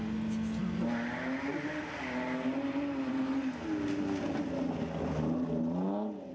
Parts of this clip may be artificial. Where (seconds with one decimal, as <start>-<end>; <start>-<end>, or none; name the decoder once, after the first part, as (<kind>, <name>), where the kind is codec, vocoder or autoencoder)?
none